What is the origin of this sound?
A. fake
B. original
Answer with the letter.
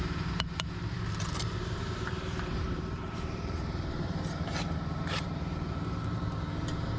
A